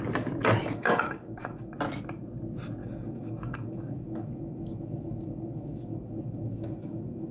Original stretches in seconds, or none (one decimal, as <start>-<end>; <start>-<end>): 0.0-0.6; 1.8-2.8